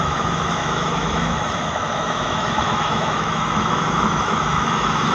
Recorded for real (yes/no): no